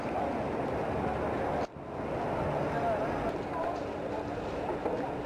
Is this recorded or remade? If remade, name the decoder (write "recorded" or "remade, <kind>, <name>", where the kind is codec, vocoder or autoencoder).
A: recorded